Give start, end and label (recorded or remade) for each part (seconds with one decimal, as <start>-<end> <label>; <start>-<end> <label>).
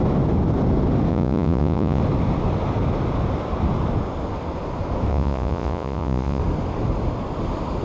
0.0-1.1 recorded; 1.1-2.0 remade; 2.0-5.1 recorded; 5.1-6.4 remade; 6.4-7.8 recorded